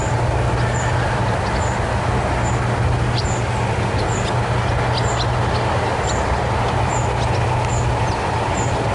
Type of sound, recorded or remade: recorded